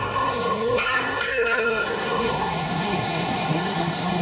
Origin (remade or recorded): remade